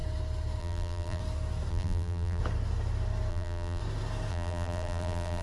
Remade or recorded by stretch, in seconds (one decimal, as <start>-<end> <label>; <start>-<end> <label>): 0.0-0.6 recorded; 0.6-1.2 remade; 1.2-1.7 recorded; 1.7-2.4 remade; 2.4-3.3 recorded; 3.3-3.8 remade; 3.8-4.3 recorded; 4.3-5.4 remade